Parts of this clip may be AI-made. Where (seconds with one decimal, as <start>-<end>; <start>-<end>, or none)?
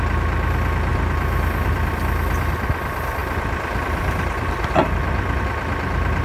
0.9-1.9; 3.2-5.4